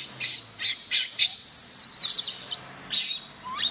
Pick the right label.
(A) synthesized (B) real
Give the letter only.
B